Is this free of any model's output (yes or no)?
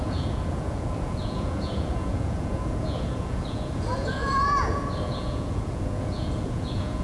no